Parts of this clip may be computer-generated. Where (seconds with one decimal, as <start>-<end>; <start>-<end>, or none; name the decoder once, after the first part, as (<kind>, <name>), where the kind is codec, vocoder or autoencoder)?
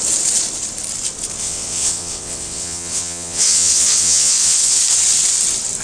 1.4-4.8 (vocoder, WaveNeXt)